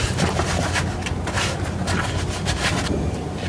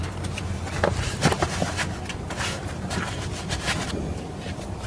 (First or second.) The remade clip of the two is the second